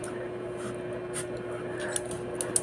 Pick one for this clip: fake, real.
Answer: real